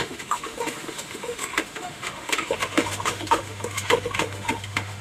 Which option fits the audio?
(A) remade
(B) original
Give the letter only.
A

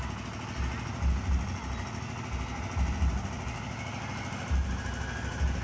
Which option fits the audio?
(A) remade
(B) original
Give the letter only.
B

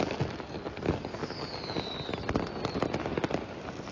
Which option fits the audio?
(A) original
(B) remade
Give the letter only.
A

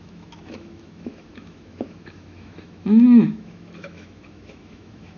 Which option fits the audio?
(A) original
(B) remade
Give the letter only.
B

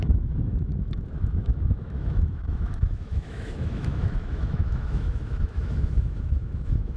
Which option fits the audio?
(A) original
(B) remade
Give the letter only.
B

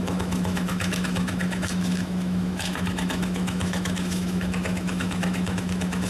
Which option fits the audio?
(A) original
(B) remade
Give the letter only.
B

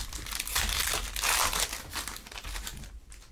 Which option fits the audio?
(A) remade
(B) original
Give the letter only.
B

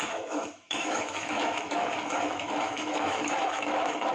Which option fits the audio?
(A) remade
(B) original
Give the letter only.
A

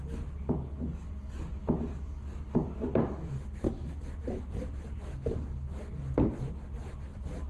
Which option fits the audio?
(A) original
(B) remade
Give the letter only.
A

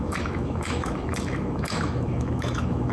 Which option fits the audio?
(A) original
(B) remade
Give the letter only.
B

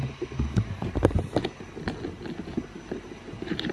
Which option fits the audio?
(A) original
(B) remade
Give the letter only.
A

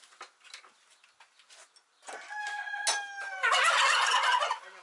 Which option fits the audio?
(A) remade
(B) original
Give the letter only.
B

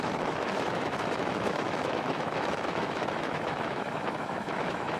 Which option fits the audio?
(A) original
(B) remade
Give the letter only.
B